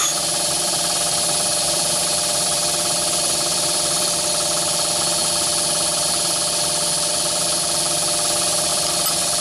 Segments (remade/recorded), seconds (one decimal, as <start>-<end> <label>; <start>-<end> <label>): 0.0-4.3 remade; 4.3-8.7 recorded; 8.7-9.4 remade